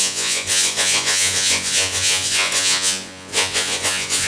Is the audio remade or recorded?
remade